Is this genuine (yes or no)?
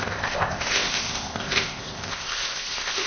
no